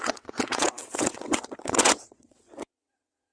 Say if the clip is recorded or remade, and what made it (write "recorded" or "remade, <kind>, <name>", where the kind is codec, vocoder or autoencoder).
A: remade, vocoder, WaveNeXt